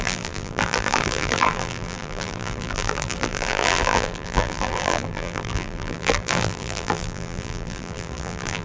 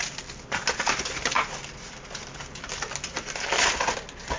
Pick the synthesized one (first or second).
first